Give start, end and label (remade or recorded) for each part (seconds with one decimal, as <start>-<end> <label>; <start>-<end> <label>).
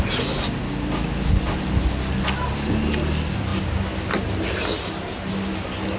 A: 0.0-6.0 recorded